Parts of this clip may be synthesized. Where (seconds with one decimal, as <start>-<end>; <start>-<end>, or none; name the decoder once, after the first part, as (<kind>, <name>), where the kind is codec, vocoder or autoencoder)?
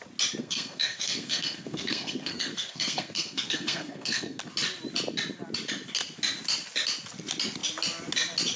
0.4-4.4 (codec, SNAC)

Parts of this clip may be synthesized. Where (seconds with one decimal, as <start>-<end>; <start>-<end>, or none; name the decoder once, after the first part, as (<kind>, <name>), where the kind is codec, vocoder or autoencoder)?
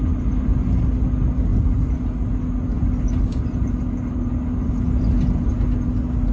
none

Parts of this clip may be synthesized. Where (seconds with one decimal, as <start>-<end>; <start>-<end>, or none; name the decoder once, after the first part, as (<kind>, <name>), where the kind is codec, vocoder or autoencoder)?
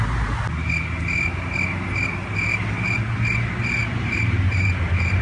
3.8-5.2 (vocoder, BigVGAN v2)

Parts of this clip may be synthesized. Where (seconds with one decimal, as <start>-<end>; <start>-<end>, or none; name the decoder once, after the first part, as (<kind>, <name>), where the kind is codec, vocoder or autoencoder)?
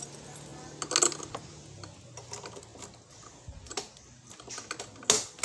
none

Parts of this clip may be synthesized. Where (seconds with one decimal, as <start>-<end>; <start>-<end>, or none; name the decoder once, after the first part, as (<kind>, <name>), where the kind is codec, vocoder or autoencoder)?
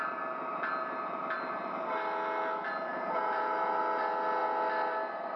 2.9-3.8 (vocoder, BigVGAN v2)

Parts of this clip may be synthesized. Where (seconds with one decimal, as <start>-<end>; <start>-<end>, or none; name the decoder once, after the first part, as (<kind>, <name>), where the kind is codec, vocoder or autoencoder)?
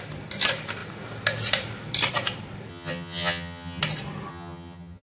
2.7-3.8 (vocoder, HiFi-GAN); 4.3-5.0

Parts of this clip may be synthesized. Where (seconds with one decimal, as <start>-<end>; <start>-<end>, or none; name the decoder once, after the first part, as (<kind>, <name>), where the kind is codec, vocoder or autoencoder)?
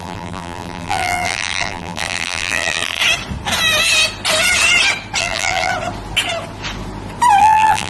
0.0-3.0 (vocoder, BigVGAN v2); 5.2-5.7; 7.4-7.9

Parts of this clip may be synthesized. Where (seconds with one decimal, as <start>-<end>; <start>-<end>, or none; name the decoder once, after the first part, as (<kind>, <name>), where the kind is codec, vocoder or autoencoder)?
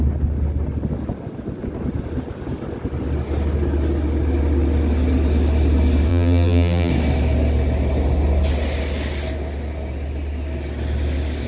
6.1-6.9 (vocoder, BigVGAN v2)